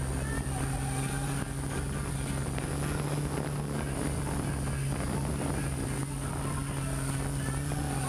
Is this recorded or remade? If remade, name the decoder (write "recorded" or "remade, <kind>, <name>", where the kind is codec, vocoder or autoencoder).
recorded